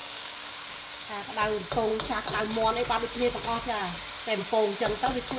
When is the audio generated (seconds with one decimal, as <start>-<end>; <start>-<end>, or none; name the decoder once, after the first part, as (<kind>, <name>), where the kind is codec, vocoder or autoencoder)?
0.0-1.1 (codec, DAC); 1.9-2.4